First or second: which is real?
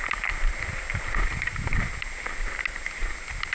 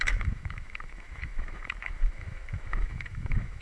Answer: first